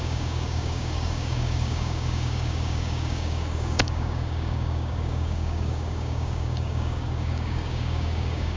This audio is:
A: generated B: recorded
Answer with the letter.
A